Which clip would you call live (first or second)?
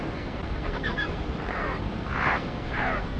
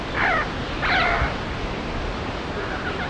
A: second